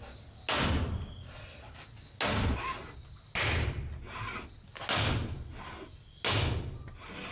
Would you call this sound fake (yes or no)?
no